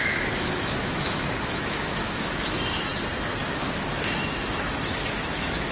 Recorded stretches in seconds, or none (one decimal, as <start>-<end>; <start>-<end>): 2.9-3.5